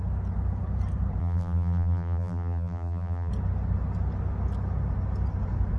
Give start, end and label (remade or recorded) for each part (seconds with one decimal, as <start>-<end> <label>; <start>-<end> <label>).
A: 0.0-1.2 recorded; 1.2-3.3 remade; 3.3-5.8 recorded